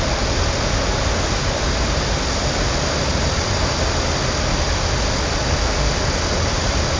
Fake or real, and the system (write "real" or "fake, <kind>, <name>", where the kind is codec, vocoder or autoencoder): real